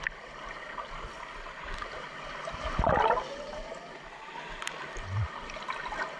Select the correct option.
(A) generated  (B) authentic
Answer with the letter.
B